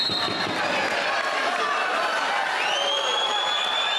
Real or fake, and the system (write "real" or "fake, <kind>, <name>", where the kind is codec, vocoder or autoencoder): real